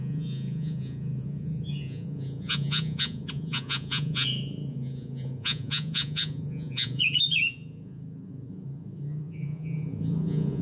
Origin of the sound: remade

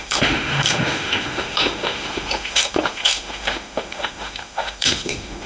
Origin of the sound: remade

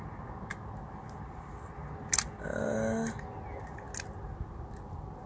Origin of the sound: recorded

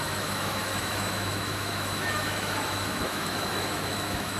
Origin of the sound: remade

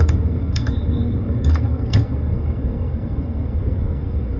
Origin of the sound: remade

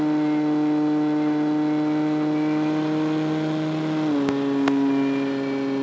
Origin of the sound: recorded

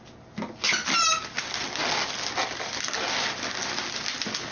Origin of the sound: recorded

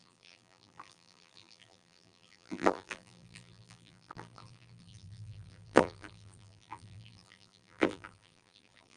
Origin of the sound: remade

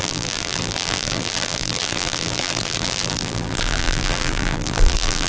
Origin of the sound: remade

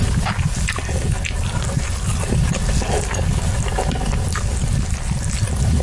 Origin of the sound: recorded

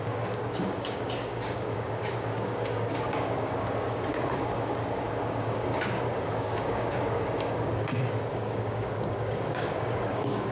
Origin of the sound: remade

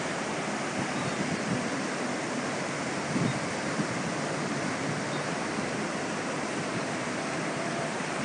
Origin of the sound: remade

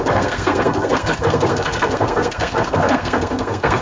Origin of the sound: remade